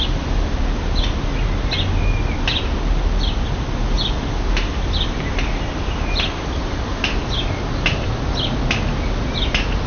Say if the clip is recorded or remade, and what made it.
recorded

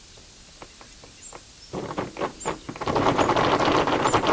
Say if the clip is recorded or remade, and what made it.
recorded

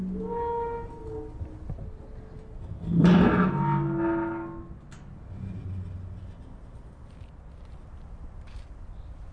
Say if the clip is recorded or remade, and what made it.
recorded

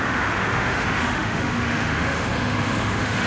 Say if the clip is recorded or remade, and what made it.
remade, autoencoder, DAC-VAE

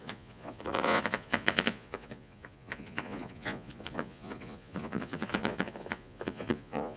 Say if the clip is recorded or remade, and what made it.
remade, vocoder, Vocos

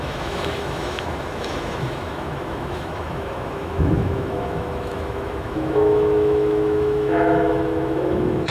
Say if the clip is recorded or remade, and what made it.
remade, autoencoder, DAC-VAE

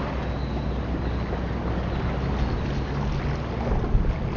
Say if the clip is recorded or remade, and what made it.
recorded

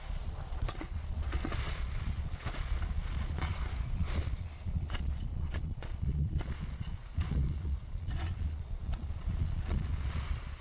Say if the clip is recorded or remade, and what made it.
remade, vocoder, Vocos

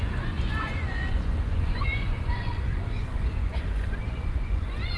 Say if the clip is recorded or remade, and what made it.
remade, vocoder, Vocos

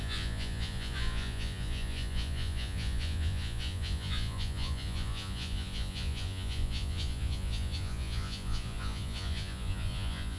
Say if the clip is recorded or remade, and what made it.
remade, vocoder, Vocos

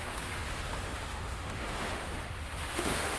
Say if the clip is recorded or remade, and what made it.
remade, autoencoder, DAC-VAE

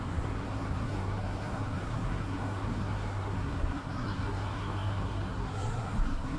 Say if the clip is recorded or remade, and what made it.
remade, codec, SNAC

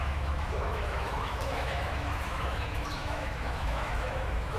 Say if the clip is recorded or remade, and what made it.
remade, autoencoder, DAC-VAE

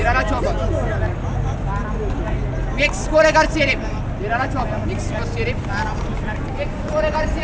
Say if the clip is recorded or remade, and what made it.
recorded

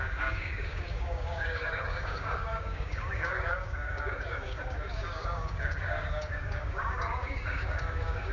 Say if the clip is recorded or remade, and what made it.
remade, codec, DAC